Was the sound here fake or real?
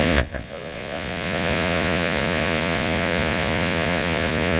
fake